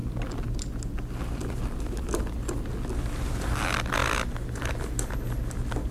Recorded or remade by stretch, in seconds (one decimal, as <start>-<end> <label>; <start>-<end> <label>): 0.0-5.9 recorded